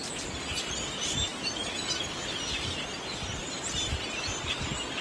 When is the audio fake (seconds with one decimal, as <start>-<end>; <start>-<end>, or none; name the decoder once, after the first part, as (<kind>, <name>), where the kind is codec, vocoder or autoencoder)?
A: none